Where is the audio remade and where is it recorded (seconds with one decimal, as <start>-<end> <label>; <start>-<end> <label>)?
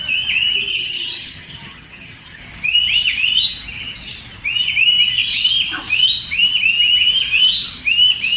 0.0-0.7 recorded; 0.7-2.4 remade; 2.4-8.4 recorded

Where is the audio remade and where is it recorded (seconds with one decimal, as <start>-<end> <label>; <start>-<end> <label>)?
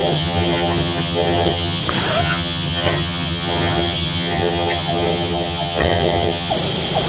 0.0-1.8 remade; 1.8-2.2 recorded; 2.2-6.5 remade; 6.5-7.1 recorded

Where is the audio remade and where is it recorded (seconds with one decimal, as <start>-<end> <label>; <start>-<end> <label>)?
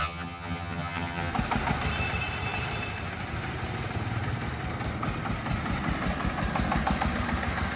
0.0-1.3 remade; 1.3-7.8 recorded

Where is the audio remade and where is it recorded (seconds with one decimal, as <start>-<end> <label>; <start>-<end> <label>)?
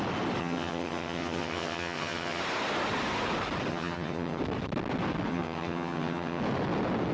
0.0-0.4 recorded; 0.4-2.4 remade; 2.4-3.7 recorded; 3.7-4.4 remade; 4.4-5.3 recorded; 5.3-6.4 remade; 6.4-7.1 recorded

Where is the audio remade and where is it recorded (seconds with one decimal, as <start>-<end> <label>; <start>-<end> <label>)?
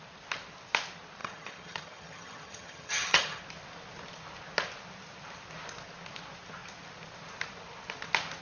0.0-1.2 recorded; 1.2-3.4 remade; 3.4-8.4 recorded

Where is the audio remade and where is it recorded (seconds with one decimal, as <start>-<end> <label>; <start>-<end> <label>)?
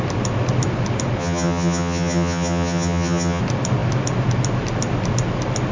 0.0-1.2 recorded; 1.2-3.4 remade; 3.4-5.7 recorded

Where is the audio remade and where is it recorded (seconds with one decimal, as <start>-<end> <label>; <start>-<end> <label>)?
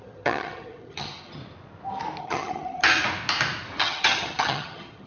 0.0-1.4 remade; 1.4-2.2 recorded; 2.2-3.0 remade; 3.0-3.8 recorded; 3.8-5.1 remade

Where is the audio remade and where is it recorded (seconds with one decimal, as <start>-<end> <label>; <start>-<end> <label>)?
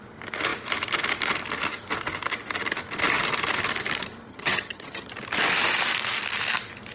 0.0-4.3 recorded; 4.3-5.1 remade; 5.1-6.9 recorded